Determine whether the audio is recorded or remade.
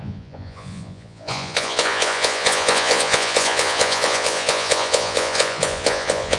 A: remade